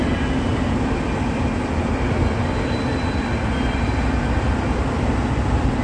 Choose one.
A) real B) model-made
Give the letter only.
A